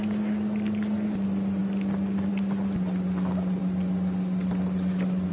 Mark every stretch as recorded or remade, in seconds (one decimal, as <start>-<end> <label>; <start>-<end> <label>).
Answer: 0.0-5.3 recorded